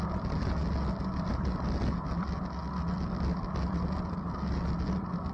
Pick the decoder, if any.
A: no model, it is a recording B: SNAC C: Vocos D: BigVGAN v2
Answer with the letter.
A